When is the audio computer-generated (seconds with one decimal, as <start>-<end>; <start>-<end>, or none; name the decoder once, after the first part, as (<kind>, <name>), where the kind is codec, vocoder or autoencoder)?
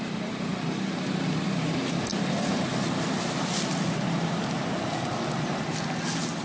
none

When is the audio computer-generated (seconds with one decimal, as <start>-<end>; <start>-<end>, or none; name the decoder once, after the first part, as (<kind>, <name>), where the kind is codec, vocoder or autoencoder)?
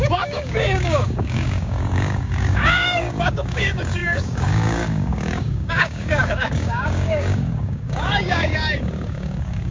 0.0-9.7 (codec, DAC)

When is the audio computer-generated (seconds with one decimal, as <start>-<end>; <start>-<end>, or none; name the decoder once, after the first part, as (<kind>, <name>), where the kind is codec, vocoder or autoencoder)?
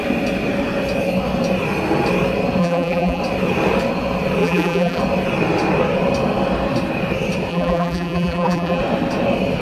2.6-3.2 (vocoder, BigVGAN v2); 4.4-5.0; 7.5-8.8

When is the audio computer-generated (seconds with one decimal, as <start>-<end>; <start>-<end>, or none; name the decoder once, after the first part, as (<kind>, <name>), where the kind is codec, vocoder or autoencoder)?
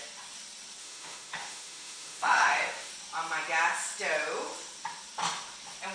0.8-2.9 (autoencoder, DAC-VAE)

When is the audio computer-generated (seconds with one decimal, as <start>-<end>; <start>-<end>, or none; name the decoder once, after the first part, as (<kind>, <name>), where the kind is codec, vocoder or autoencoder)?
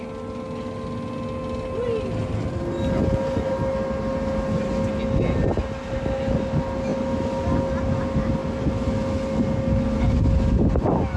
none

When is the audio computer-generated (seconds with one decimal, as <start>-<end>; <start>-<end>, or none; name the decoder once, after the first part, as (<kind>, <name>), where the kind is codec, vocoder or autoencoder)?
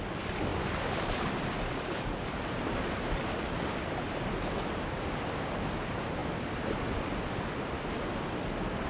0.5-4.7 (vocoder, BigVGAN v2); 6.2-7.7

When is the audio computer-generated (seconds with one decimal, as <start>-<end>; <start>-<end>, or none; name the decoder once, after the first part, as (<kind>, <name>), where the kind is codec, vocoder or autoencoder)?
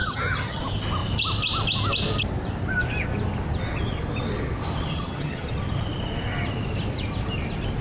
0.0-0.6 (vocoder, HiFi-GAN); 4.9-5.5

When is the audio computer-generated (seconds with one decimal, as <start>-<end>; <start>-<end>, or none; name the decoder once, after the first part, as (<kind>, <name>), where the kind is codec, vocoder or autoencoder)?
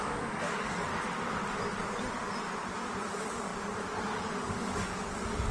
0.0-0.9 (codec, DAC); 3.0-3.5; 4.4-5.5